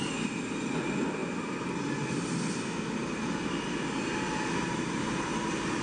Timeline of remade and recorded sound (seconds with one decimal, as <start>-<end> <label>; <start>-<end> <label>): 0.0-5.8 recorded